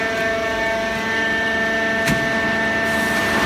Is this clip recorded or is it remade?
recorded